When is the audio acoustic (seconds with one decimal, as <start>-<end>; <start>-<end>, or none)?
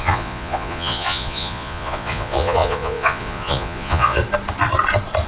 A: 4.2-5.3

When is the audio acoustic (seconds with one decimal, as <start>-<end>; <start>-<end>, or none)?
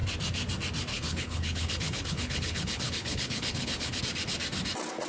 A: 0.0-0.9; 4.0-5.1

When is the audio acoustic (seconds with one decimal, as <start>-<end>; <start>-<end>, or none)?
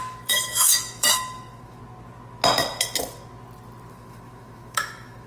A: 1.8-3.9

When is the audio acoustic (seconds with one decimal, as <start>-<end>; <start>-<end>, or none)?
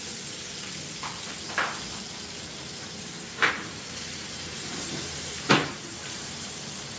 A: 0.0-2.5; 6.5-7.0